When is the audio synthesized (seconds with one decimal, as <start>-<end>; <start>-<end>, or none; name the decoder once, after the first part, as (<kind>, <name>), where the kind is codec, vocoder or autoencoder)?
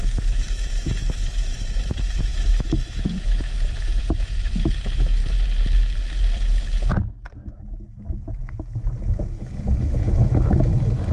0.0-5.2 (autoencoder, DAC-VAE); 7.5-11.1